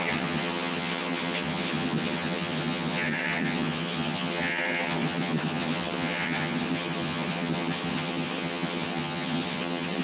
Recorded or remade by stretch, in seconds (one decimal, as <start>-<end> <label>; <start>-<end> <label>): 0.0-10.0 remade